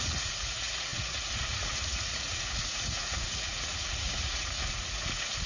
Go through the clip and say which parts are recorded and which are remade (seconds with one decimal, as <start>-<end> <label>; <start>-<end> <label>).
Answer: 0.0-5.5 remade